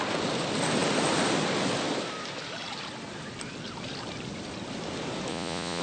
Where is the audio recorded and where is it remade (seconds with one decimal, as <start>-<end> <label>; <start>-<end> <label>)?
0.0-5.3 recorded; 5.3-5.8 remade